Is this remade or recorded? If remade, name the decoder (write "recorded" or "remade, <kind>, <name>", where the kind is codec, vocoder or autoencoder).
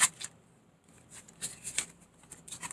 recorded